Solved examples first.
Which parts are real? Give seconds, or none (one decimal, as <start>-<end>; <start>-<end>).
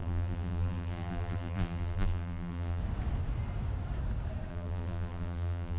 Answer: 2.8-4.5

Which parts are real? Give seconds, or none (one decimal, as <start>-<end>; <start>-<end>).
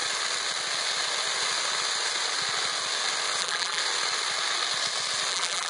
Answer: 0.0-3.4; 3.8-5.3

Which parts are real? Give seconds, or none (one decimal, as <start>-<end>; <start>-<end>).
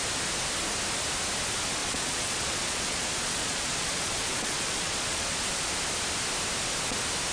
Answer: 0.0-1.8; 5.7-7.3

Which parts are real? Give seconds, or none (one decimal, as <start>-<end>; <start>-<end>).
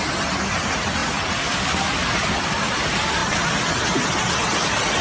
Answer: 0.0-5.0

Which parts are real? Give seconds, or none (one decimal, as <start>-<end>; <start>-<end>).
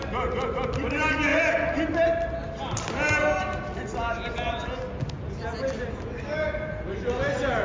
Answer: 0.0-7.6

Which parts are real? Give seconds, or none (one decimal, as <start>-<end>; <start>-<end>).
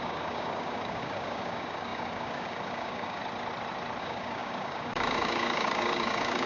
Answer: 3.2-4.0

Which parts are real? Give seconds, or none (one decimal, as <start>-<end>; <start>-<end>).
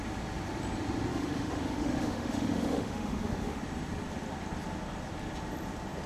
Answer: 0.0-1.1; 3.6-6.1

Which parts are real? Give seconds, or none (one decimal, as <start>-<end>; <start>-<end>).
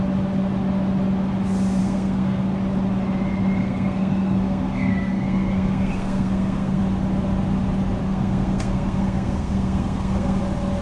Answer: 0.0-1.8; 2.6-3.6; 6.8-8.0; 10.4-10.8